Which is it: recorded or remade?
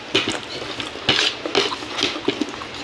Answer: recorded